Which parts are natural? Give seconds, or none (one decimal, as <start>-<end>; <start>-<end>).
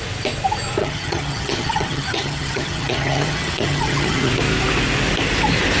0.0-0.8; 4.3-5.8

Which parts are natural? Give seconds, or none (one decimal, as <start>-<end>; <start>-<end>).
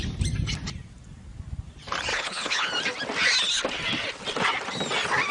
0.0-2.1; 2.7-5.3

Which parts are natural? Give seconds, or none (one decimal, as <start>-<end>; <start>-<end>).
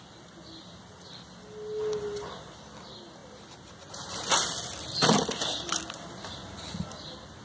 0.0-7.4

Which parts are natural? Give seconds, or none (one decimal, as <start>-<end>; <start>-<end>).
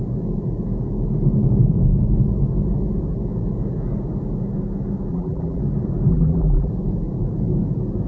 0.0-5.1; 5.6-6.1; 6.7-8.1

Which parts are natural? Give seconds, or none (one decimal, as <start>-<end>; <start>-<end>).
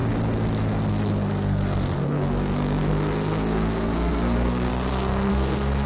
0.0-0.9